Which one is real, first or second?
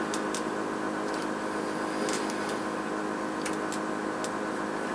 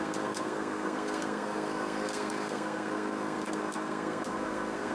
first